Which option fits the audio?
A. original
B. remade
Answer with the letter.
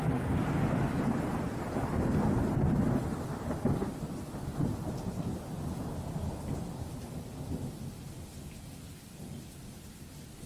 A